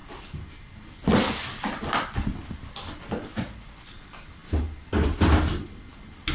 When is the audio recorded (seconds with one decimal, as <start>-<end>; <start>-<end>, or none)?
0.0-3.3; 3.8-6.3